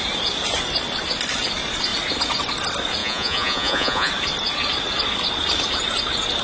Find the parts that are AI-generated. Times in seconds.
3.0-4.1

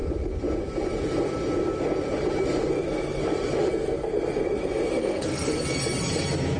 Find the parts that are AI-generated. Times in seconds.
2.7-3.2; 3.7-5.5